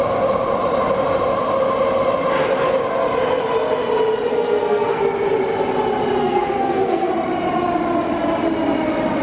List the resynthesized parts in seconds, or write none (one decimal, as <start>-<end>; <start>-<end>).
4.3-5.0; 6.2-7.1